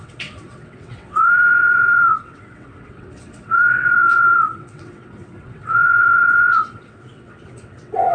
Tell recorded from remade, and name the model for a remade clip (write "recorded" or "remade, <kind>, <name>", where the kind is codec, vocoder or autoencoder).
remade, vocoder, WaveNeXt